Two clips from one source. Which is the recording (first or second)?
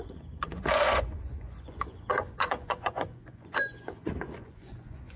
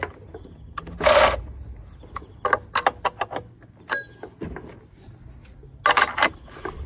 second